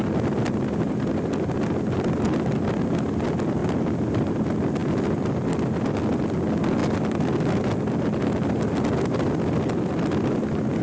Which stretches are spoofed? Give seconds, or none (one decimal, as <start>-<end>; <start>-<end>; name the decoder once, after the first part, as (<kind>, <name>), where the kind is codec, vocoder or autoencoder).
none